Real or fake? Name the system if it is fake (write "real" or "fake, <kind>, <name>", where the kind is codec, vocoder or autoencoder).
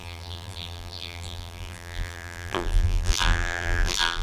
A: fake, vocoder, BigVGAN v2